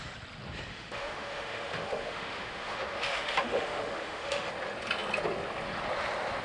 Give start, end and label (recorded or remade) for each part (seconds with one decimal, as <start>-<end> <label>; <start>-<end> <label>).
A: 0.0-0.7 recorded; 0.7-4.5 remade; 4.5-6.4 recorded